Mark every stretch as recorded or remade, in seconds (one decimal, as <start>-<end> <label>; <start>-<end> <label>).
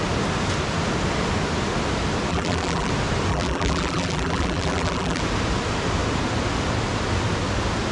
0.0-2.3 recorded; 2.3-2.9 remade; 2.9-3.3 recorded; 3.3-5.2 remade; 5.2-7.9 recorded